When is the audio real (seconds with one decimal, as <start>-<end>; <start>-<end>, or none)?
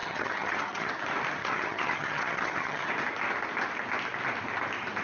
0.9-1.4; 2.9-5.0